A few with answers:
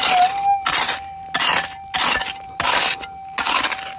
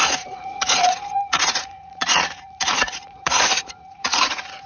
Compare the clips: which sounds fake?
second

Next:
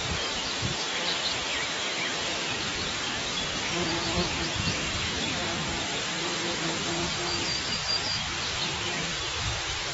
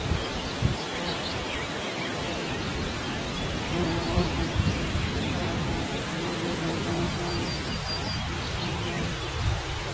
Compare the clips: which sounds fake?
first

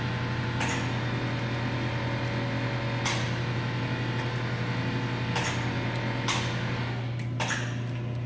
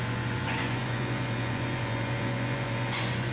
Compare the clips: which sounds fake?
second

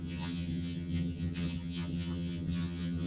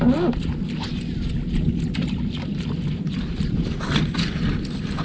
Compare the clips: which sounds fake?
first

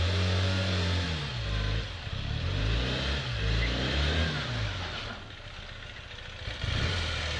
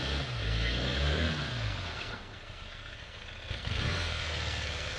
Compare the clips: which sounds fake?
second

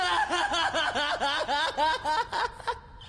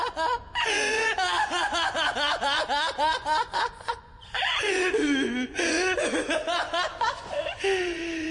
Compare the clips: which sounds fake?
second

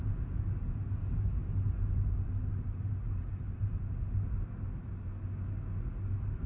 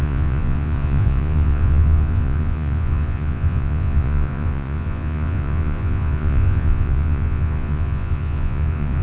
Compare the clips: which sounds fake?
second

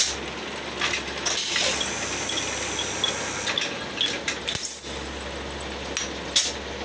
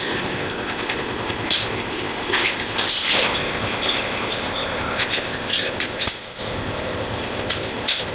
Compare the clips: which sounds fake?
second